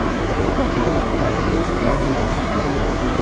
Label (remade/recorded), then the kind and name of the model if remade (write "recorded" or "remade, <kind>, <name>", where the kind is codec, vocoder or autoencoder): remade, codec, SNAC